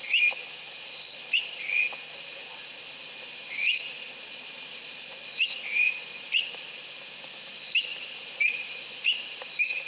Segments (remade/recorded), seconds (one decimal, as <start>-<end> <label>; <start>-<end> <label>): 0.0-7.9 recorded; 7.9-8.9 remade; 8.9-9.9 recorded